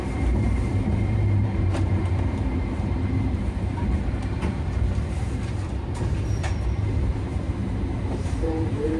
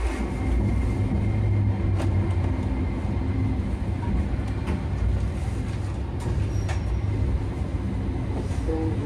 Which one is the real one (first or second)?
second